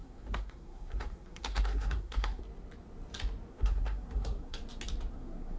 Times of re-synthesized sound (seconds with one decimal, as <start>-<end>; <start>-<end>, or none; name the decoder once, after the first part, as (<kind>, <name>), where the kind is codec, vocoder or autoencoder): 0.0-2.4 (codec, SNAC); 3.5-4.6; 5.1-5.6

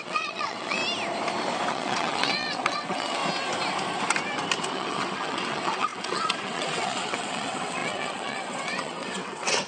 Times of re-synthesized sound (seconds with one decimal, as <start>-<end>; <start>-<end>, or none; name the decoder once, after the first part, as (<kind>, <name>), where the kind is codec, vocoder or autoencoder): 0.0-0.8 (vocoder, WaveNeXt); 1.7-3.2; 4.7-9.7

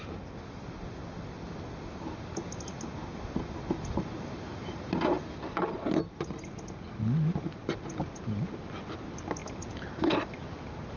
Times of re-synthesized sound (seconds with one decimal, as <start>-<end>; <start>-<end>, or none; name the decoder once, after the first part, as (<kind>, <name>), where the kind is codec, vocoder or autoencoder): none

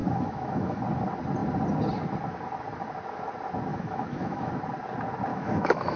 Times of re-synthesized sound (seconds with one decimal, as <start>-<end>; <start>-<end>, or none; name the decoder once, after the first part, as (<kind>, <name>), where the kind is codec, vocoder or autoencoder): 0.0-0.8 (autoencoder, DAC-VAE); 3.7-4.5; 5.3-6.0